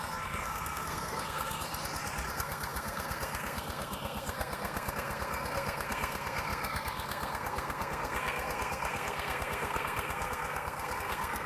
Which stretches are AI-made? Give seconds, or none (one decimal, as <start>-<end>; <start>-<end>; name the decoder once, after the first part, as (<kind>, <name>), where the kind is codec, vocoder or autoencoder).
0.0-1.7 (codec, SNAC); 2.3-11.5